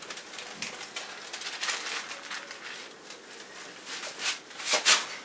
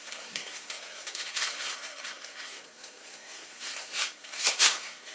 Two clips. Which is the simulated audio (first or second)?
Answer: second